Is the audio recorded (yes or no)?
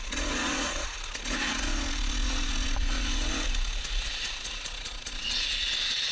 no